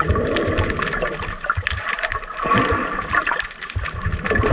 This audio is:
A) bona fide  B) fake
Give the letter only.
A